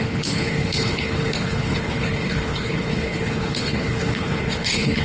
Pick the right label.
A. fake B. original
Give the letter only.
A